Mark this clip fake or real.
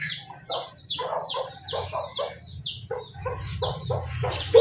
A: fake